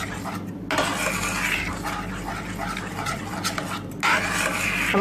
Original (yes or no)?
yes